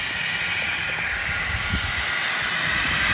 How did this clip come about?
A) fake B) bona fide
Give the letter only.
B